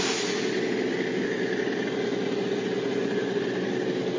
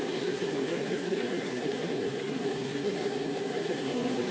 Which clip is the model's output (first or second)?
second